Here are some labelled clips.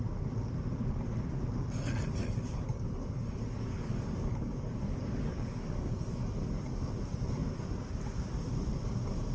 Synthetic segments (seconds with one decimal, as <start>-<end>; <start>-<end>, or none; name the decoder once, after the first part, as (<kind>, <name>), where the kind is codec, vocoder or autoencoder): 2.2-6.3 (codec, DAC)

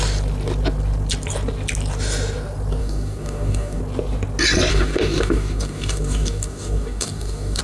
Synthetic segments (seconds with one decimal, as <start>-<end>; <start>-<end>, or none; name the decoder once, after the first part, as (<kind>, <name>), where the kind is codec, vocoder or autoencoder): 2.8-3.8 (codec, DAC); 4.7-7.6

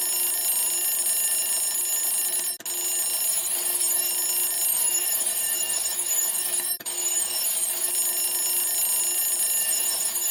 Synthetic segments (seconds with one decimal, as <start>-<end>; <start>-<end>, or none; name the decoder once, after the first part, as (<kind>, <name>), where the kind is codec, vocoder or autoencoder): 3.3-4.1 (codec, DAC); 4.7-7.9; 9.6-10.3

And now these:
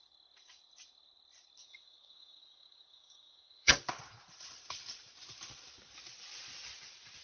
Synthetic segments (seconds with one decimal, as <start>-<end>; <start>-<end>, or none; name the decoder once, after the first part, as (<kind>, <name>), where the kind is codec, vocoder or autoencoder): 1.6-3.7 (codec, DAC)